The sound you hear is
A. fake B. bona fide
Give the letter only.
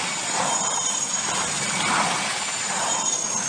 B